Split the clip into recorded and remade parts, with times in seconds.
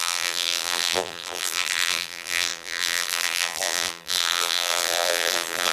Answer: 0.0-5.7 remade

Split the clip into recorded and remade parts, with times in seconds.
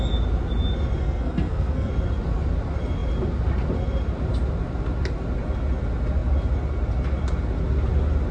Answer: 0.0-1.0 recorded; 1.0-1.9 remade; 1.9-8.3 recorded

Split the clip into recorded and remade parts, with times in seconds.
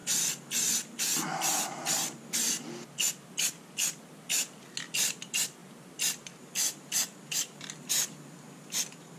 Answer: 0.0-9.2 recorded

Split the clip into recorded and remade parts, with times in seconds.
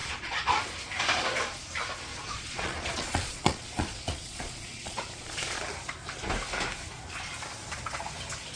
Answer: 0.0-0.6 remade; 0.6-2.1 recorded; 2.1-5.6 remade; 5.6-8.6 recorded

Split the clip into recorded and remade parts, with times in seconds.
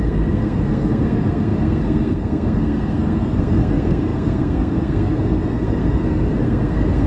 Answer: 0.0-7.1 remade